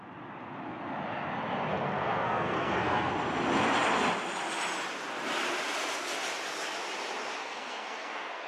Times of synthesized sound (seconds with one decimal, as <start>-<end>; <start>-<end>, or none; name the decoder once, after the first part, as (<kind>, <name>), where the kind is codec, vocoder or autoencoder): 1.7-3.1 (codec, SNAC); 7.4-8.5